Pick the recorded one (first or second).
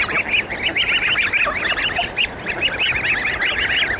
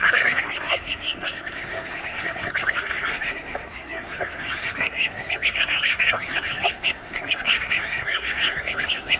first